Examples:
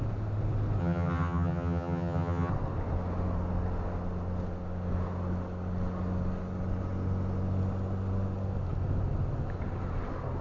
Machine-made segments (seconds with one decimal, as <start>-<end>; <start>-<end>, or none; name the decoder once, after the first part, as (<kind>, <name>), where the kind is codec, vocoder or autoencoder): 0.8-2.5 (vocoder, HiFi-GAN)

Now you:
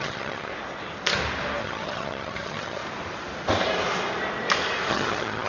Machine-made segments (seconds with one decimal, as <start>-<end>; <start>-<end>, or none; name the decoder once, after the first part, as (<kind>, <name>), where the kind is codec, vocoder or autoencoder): 0.0-0.5 (vocoder, HiFi-GAN); 1.6-2.8; 4.9-5.5

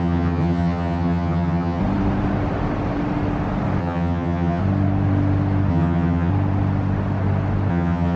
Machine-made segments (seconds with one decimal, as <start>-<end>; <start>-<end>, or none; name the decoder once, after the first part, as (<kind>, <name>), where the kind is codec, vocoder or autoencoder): 0.0-1.8 (vocoder, HiFi-GAN); 3.8-4.6; 5.7-6.3; 7.7-8.2